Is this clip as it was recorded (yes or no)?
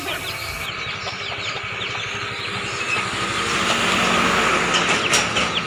yes